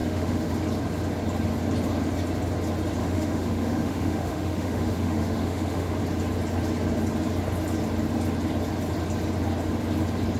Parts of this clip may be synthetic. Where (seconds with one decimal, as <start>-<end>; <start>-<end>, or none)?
0.0-0.5; 3.0-6.0